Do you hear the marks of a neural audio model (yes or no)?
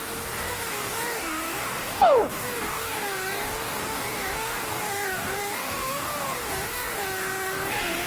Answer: yes